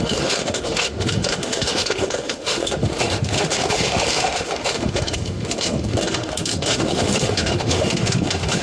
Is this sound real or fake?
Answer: fake